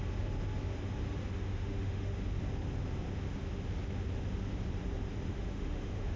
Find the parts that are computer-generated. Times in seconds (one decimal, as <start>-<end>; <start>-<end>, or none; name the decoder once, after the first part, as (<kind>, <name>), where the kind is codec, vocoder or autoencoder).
1.5-2.1 (autoencoder, DAC-VAE); 5.3-6.2